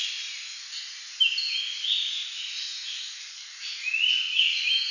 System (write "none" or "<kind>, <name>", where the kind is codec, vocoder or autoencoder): none